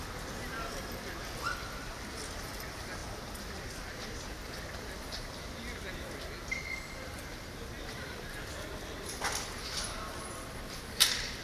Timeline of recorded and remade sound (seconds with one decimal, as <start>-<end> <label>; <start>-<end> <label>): 0.0-11.4 recorded